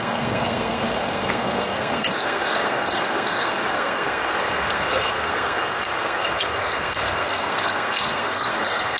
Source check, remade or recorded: remade